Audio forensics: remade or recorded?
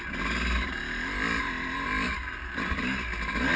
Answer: recorded